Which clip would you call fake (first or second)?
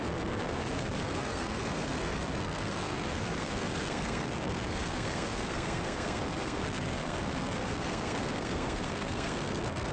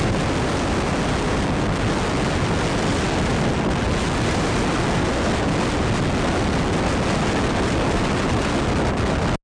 first